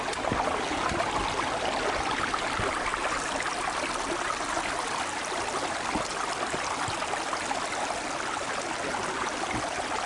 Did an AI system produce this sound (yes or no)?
no